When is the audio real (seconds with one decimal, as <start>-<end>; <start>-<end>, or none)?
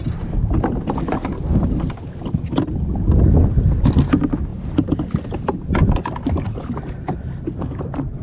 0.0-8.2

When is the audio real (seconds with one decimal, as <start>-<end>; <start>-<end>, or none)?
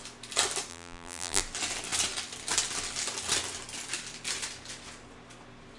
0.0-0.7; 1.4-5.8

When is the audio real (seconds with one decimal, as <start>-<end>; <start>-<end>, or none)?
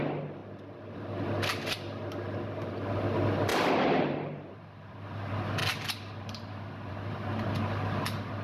0.0-3.5; 4.9-8.4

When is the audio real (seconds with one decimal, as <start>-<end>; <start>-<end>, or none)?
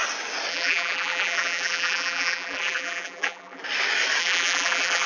0.0-0.5; 3.6-4.2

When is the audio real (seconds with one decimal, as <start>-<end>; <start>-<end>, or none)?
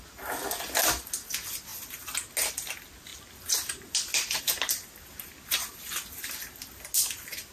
0.0-7.5